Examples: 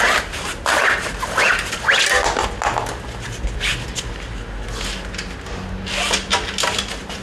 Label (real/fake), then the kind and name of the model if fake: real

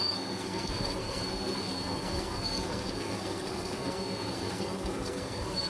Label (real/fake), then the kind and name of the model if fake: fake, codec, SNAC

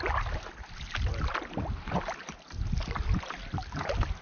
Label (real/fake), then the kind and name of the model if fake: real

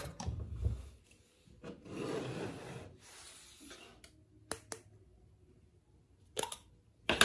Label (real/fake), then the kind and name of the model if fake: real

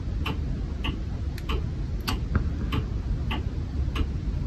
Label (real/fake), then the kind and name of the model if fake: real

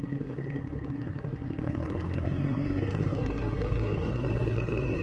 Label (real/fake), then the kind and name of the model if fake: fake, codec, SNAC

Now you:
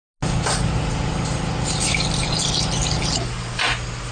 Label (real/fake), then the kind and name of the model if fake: real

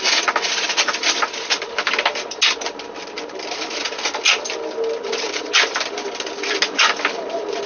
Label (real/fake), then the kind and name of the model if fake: real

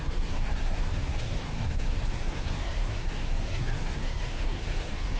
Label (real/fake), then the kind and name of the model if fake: fake, codec, SNAC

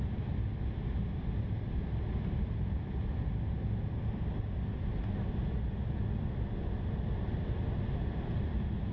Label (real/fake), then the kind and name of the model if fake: real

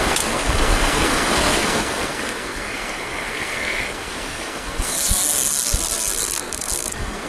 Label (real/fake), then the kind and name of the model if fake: fake, codec, SNAC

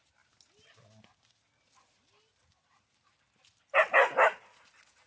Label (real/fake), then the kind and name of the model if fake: real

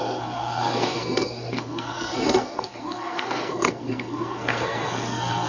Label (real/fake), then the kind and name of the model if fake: fake, codec, SNAC